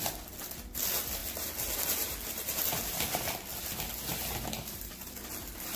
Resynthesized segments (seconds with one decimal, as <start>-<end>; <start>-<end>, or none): none